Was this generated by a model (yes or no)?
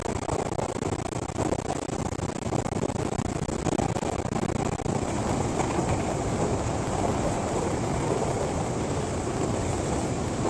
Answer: no